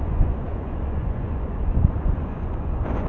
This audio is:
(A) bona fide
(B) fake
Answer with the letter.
B